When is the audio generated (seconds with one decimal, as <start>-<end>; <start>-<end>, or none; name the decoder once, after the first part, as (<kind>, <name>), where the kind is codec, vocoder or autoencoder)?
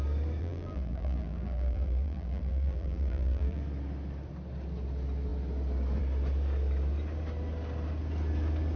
0.4-3.6 (vocoder, BigVGAN v2)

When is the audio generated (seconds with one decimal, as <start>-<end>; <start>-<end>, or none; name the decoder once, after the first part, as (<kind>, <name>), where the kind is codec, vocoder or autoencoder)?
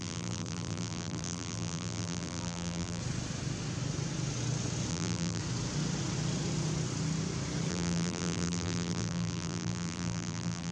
0.0-3.0 (vocoder, BigVGAN v2); 4.9-5.4; 7.7-10.7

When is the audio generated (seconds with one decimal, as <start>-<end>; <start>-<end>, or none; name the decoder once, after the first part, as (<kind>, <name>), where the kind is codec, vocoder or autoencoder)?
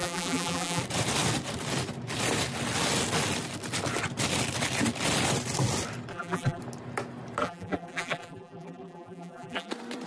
0.0-0.8 (vocoder, BigVGAN v2); 6.1-6.6; 7.4-9.7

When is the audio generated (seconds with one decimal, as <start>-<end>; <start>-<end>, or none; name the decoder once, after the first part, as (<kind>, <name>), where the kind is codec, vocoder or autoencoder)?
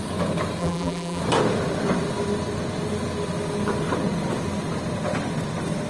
0.6-1.2 (vocoder, BigVGAN v2)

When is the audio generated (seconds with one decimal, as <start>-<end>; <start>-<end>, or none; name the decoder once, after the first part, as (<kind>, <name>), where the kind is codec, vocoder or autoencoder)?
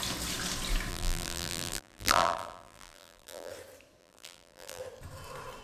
0.9-3.5 (vocoder, BigVGAN v2); 4.0-4.8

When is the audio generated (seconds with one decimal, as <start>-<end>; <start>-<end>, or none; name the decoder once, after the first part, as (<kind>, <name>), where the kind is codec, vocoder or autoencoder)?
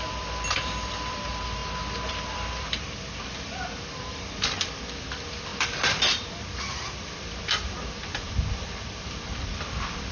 0.0-1.6 (vocoder, BigVGAN v2); 2.1-10.1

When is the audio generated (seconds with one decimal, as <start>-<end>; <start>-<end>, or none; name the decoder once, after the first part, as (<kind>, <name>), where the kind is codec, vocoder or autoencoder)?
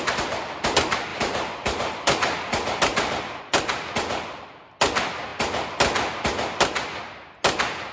1.1-3.4 (vocoder, BigVGAN v2)